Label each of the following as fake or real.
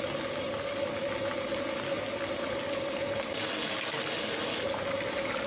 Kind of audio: real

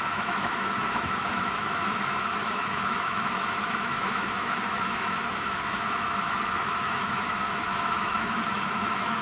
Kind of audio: fake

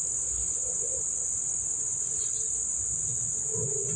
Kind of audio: real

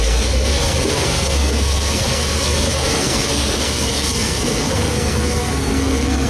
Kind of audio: fake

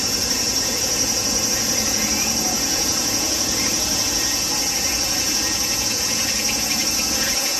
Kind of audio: fake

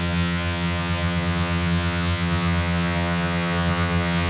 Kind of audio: fake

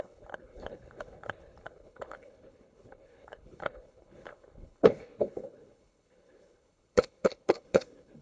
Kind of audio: fake